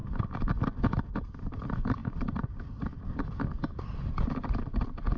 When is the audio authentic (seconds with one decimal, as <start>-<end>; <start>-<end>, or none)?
0.0-5.2